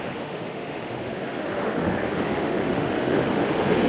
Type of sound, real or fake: fake